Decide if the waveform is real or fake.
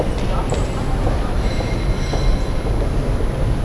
real